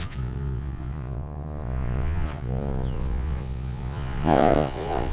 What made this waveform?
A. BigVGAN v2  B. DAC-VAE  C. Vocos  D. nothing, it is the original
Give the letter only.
C